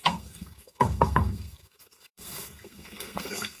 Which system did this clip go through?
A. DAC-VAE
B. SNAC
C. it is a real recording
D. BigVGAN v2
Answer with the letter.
B